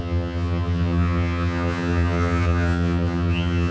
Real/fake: fake